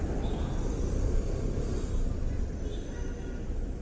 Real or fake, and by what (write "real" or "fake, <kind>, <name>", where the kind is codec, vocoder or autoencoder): real